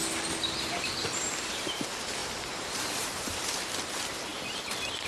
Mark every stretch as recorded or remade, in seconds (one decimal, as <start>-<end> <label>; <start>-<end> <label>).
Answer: 0.0-1.0 recorded; 1.0-1.8 remade; 1.8-2.2 recorded; 2.2-3.4 remade; 3.4-5.1 recorded